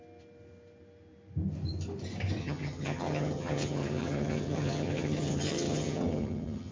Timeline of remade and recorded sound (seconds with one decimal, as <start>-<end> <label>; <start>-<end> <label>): 0.0-2.4 recorded; 2.4-6.7 remade